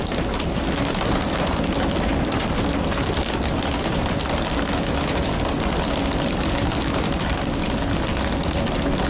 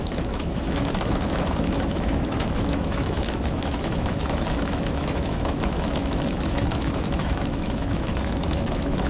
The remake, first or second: second